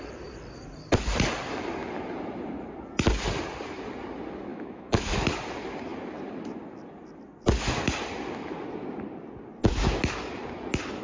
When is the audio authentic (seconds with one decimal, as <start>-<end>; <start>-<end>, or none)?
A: 0.0-4.5; 5.1-11.0